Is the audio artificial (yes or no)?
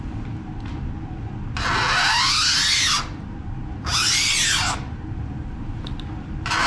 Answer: no